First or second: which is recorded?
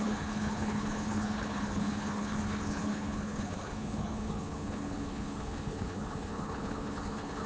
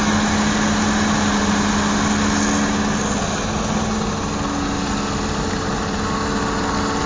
second